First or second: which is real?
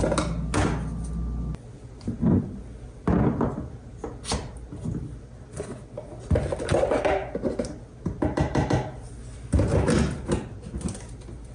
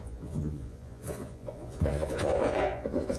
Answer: first